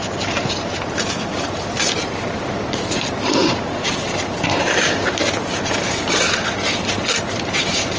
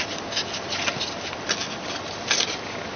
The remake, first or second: first